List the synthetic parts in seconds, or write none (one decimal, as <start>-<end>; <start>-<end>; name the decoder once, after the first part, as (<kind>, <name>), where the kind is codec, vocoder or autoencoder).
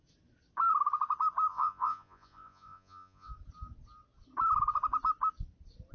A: 1.5-3.3 (vocoder, Vocos)